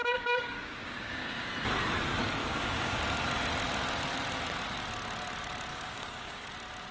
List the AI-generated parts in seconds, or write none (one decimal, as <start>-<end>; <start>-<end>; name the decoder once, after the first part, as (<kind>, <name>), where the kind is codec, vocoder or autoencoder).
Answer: 0.0-1.5 (codec, DAC); 2.4-3.0; 5.7-6.5